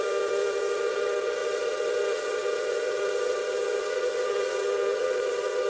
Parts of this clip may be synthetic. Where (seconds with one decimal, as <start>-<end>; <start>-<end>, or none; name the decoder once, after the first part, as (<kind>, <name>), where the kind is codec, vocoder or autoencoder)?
0.0-5.7 (vocoder, Vocos)